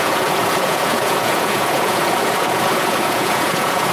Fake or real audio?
fake